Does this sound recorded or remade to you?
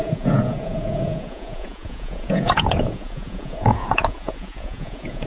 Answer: remade